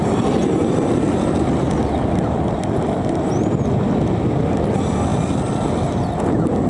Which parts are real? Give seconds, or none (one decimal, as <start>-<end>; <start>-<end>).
0.0-6.7